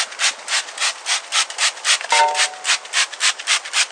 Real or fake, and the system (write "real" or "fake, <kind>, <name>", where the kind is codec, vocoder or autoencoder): real